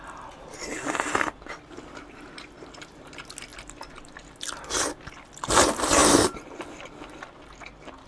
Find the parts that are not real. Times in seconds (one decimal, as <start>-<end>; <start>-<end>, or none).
none